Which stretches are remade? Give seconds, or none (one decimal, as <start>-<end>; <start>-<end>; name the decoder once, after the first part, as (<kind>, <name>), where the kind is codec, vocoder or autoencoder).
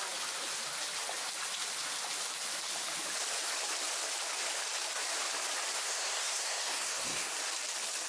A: 5.8-7.3 (codec, SNAC)